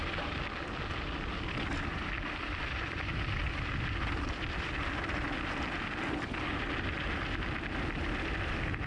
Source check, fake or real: real